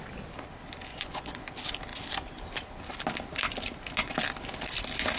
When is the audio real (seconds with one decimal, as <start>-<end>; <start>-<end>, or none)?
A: 0.0-0.9; 1.4-5.2